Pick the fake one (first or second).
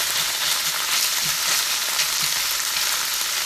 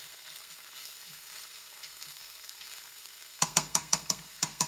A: second